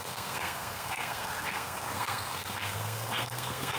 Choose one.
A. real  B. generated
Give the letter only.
B